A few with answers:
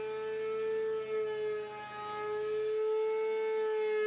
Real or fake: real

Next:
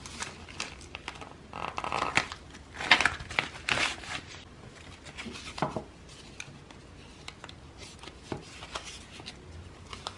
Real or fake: real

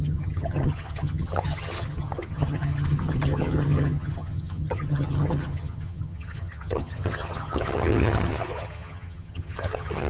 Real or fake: fake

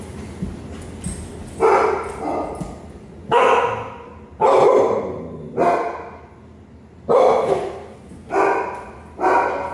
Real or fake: real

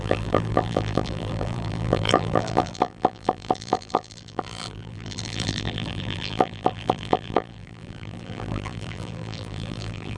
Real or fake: fake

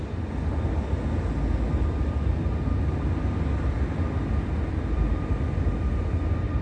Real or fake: real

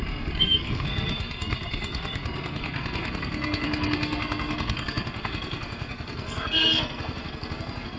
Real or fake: fake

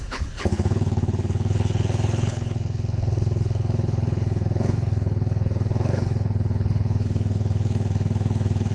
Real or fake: fake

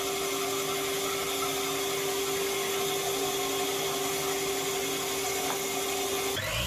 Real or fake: real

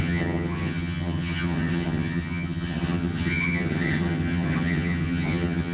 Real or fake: fake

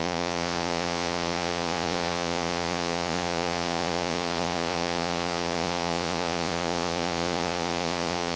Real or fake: fake